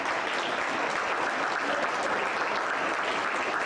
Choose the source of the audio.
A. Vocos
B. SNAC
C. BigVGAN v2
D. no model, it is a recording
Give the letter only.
D